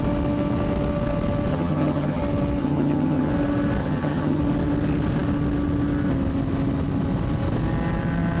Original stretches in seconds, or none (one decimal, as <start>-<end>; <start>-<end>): 0.0-1.5; 2.2-2.6; 3.3-3.8; 4.4-8.4